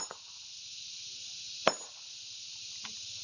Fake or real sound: real